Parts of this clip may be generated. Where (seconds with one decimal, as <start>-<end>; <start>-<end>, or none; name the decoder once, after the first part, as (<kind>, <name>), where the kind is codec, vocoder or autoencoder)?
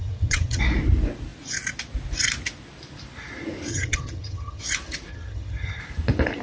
0.0-0.6 (vocoder, HiFi-GAN); 3.7-4.6; 5.1-5.8